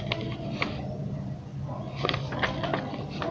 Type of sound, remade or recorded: recorded